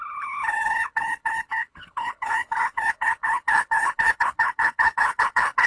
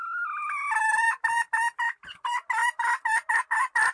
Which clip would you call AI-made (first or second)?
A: first